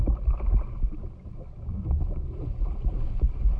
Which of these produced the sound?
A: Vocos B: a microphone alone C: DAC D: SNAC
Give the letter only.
B